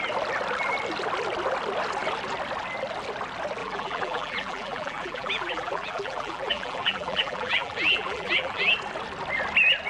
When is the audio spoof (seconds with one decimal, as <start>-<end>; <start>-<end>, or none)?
3.6-8.7